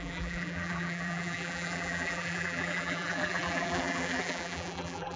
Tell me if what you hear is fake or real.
fake